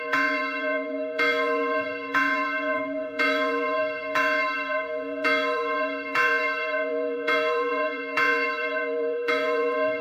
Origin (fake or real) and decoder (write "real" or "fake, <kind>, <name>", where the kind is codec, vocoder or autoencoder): fake, vocoder, Vocos